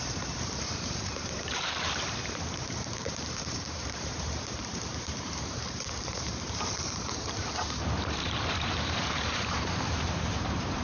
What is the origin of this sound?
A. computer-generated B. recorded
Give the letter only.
A